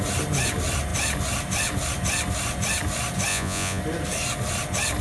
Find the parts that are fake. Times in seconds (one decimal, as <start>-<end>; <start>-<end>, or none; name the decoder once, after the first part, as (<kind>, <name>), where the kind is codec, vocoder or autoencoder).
3.3-3.8 (vocoder, Vocos)